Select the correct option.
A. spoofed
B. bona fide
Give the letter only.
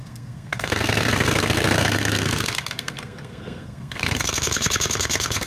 A